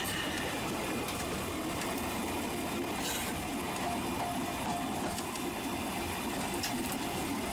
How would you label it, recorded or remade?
recorded